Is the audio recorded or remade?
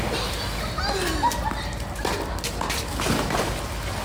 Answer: recorded